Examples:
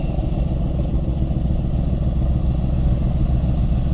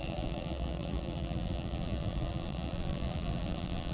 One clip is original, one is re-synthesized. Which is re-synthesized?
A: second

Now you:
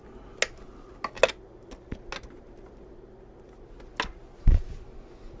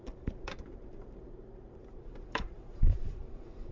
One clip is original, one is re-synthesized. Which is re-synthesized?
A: second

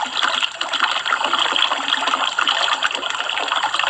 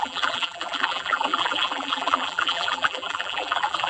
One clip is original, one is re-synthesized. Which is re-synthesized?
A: second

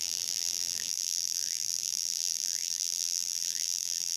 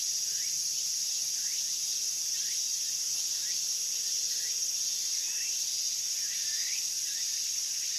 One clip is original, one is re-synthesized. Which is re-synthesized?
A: first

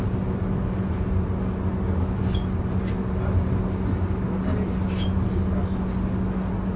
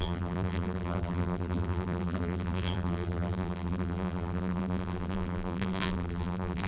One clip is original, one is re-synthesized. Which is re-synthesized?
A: second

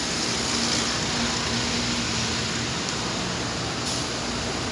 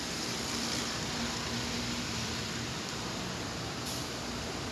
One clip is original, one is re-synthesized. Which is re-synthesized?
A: second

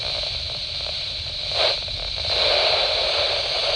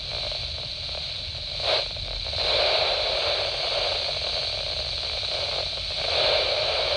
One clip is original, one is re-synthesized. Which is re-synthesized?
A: first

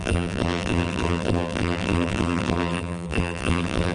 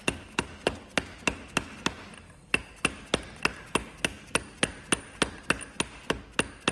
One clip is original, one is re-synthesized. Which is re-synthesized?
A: first